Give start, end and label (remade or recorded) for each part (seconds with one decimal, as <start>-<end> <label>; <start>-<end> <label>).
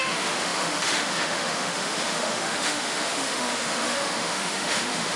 0.0-5.2 remade